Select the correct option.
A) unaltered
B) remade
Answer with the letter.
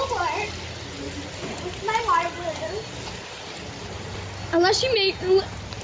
A